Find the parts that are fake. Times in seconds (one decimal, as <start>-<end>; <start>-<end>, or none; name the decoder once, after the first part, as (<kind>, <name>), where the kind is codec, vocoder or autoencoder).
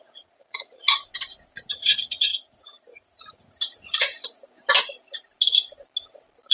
0.0-1.0 (vocoder, Vocos); 1.7-4.4